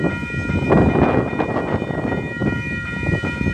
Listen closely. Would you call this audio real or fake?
real